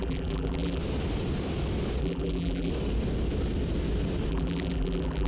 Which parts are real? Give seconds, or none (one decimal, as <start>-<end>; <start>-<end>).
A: 0.8-2.0; 2.7-4.3